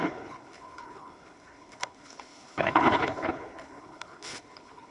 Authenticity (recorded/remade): remade